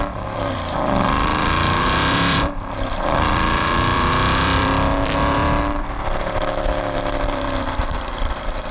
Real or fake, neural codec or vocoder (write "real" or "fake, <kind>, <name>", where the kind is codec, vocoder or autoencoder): fake, vocoder, BigVGAN v2